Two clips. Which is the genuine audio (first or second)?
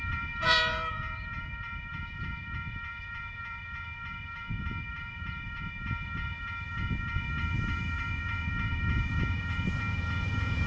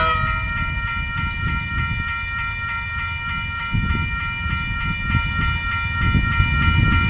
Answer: second